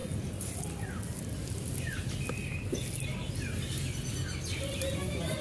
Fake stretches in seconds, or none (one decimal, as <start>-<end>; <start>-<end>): none